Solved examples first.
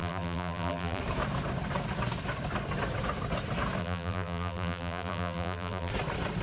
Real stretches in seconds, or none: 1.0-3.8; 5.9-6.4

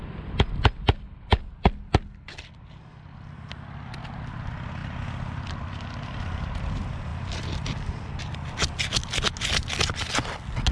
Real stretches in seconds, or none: 0.0-4.8; 6.6-7.1; 7.9-10.7

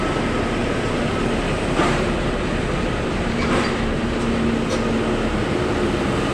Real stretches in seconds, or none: 0.0-0.6; 4.4-6.3